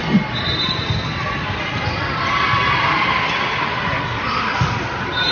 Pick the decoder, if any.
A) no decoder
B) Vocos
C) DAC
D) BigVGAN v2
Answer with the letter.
A